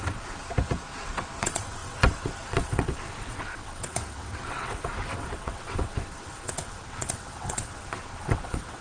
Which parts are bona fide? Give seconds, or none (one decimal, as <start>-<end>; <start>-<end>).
0.4-1.0

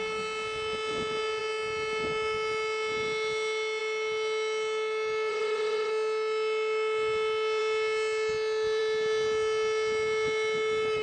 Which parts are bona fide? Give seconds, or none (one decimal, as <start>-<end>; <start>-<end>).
0.0-5.3; 5.9-11.0

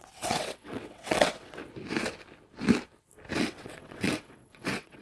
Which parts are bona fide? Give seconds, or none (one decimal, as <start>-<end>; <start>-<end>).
1.6-3.4

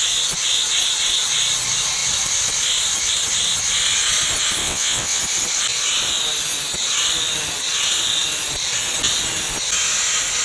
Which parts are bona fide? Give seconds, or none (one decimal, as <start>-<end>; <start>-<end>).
0.0-4.6; 5.2-10.4

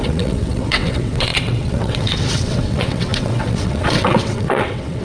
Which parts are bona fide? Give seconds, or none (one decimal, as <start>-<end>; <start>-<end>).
none